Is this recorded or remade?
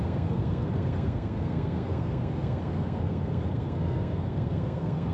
remade